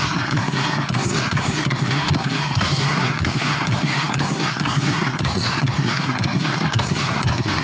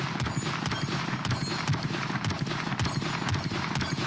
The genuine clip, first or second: second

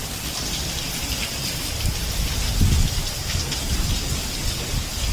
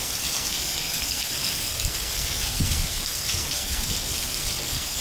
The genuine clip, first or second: first